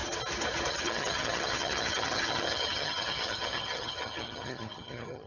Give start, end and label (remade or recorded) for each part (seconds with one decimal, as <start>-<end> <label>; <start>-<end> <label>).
0.0-0.7 recorded; 0.7-5.3 remade